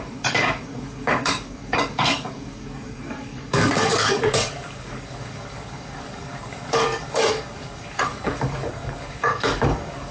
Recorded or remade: remade